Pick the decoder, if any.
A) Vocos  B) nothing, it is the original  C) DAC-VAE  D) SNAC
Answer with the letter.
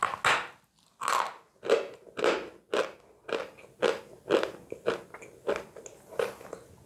B